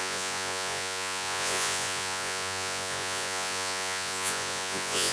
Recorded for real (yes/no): no